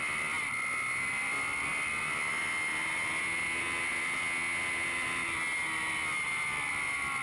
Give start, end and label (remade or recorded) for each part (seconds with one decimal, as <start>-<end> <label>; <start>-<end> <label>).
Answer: 0.0-7.2 recorded